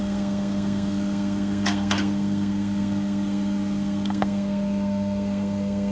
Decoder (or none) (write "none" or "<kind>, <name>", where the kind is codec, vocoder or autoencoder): codec, SNAC